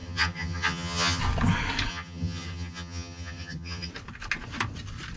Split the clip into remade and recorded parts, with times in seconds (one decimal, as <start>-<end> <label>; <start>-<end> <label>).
0.0-1.2 remade; 1.2-1.9 recorded; 1.9-3.9 remade; 3.9-5.2 recorded